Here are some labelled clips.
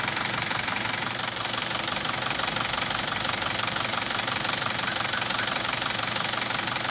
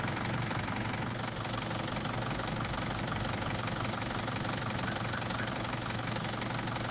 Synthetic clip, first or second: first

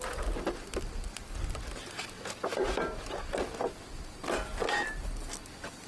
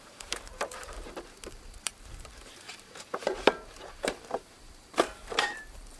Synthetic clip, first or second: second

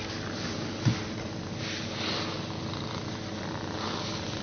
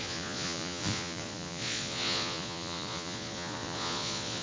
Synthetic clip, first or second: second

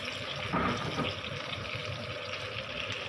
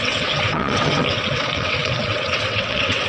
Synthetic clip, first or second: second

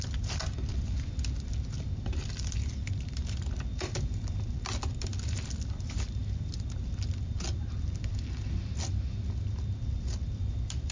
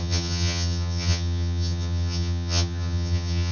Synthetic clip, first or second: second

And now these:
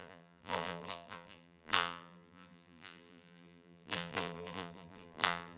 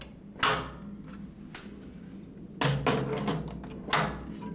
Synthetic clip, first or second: first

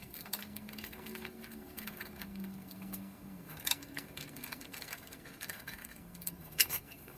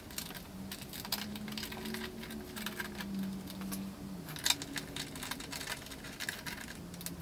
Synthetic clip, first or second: first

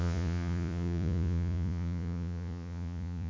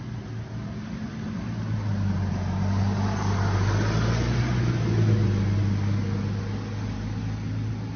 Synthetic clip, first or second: first